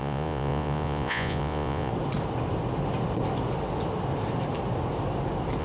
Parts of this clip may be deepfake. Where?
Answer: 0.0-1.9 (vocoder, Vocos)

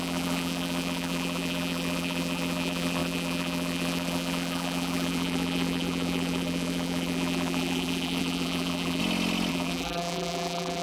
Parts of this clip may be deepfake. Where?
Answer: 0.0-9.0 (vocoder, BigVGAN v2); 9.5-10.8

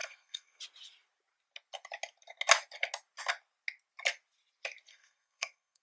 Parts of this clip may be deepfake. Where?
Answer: 0.0-0.6 (codec, SNAC); 4.9-5.8

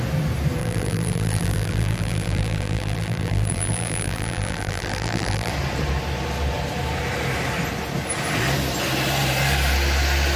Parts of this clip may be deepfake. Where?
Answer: 0.6-5.5 (vocoder, BigVGAN v2)

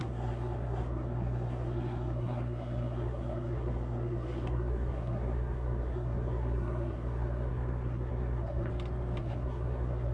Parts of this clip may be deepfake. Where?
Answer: 0.0-8.7 (codec, SNAC); 9.2-10.1

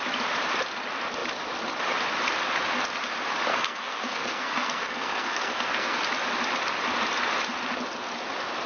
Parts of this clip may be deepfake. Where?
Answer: 3.5-6.0 (codec, SNAC)

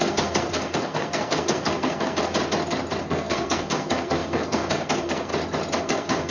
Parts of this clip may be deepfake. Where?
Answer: 0.0-2.2 (codec, SNAC); 3.0-5.3; 5.8-6.3